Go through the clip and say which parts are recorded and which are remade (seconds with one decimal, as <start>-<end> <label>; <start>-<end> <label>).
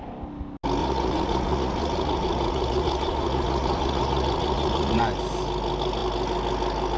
0.0-0.8 recorded; 0.8-5.0 remade; 5.0-7.0 recorded